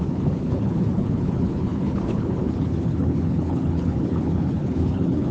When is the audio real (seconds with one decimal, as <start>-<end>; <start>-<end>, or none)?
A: none